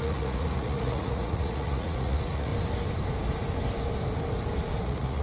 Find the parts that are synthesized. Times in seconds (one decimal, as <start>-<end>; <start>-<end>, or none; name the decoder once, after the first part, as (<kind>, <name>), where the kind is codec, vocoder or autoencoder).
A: 0.0-2.5 (vocoder, Vocos); 4.8-5.2